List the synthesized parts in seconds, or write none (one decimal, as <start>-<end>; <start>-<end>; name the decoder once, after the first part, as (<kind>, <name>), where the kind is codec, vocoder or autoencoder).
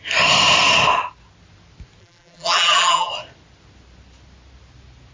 2.0-3.1 (vocoder, BigVGAN v2)